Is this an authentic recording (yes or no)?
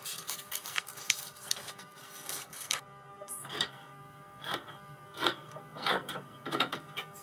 no